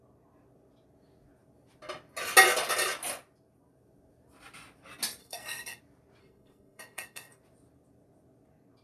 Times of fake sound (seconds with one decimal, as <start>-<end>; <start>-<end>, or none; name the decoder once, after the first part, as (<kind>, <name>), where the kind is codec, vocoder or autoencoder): 5.2-5.8 (codec, SNAC); 6.2-7.4